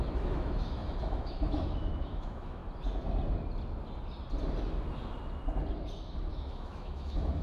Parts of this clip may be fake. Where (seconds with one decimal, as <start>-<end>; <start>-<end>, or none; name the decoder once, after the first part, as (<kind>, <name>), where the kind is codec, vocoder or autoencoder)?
0.0-2.6 (autoencoder, DAC-VAE); 6.3-7.4